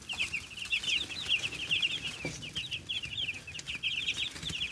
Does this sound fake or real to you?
real